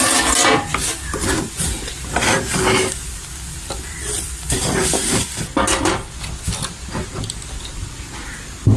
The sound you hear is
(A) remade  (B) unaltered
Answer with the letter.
B